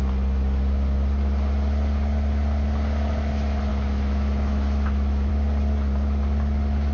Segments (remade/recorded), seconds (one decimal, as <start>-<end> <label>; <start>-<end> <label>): 0.0-3.7 recorded; 3.7-5.3 remade; 5.3-6.9 recorded